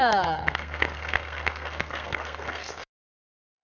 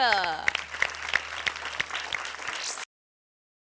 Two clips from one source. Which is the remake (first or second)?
first